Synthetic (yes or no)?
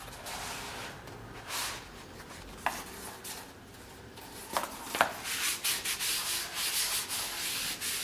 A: no